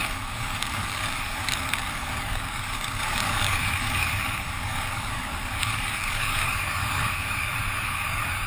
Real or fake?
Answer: fake